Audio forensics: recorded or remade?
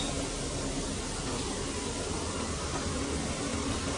recorded